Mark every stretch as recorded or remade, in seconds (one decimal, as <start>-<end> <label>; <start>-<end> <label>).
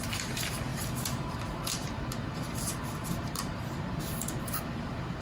0.0-0.7 recorded; 0.7-3.8 remade; 3.8-5.2 recorded